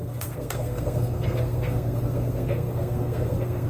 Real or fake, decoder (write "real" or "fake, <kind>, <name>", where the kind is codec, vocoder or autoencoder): fake, codec, SNAC